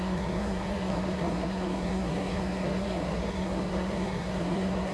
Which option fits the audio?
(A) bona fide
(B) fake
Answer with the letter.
B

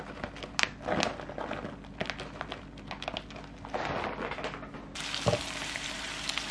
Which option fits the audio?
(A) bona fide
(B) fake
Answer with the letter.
A